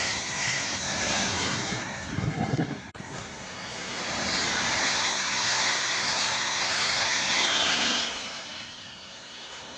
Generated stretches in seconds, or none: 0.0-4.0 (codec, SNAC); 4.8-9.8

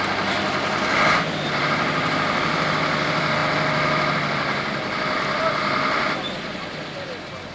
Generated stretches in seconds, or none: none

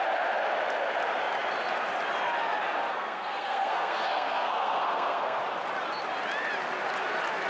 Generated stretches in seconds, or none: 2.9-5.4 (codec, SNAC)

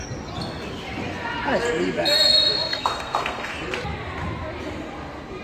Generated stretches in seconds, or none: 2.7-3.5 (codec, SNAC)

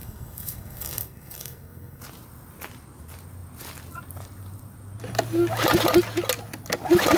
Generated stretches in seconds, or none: 0.0-2.0 (codec, SNAC)